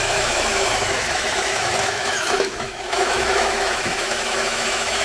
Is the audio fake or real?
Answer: fake